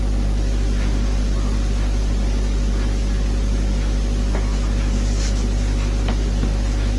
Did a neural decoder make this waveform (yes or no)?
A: no